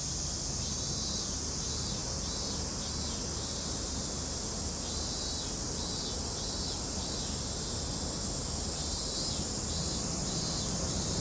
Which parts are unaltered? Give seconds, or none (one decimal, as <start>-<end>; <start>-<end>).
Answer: 0.0-11.2